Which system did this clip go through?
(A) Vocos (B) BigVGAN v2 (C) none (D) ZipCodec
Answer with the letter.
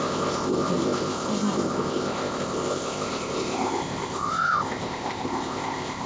D